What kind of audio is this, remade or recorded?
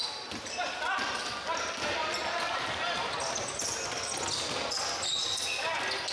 recorded